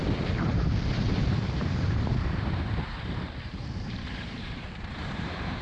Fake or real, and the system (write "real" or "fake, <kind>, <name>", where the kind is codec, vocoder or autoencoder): fake, vocoder, BigVGAN v2